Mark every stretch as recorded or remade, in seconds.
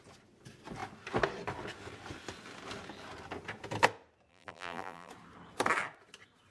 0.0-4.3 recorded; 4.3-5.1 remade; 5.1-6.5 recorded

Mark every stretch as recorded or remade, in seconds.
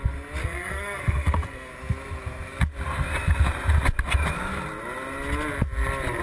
0.0-0.4 recorded; 0.4-1.7 remade; 1.7-6.2 recorded